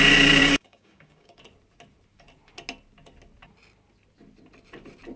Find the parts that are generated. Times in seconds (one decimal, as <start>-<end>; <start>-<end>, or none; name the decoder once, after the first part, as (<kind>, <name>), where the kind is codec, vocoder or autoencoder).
0.4-1.4 (codec, DAC)